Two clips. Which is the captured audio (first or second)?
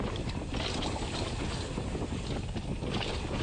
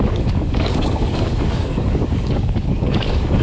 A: first